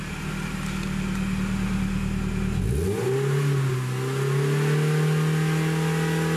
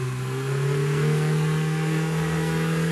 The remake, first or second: second